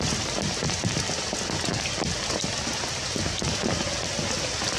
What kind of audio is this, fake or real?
real